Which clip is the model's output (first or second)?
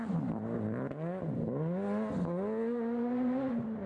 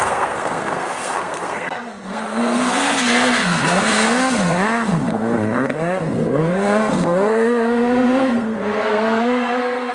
second